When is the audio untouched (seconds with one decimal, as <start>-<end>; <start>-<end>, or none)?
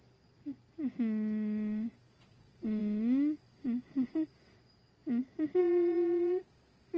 0.6-2.2; 2.8-3.8